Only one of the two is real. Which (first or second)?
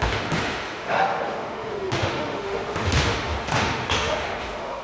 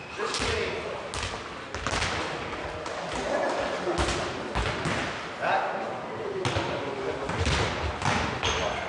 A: second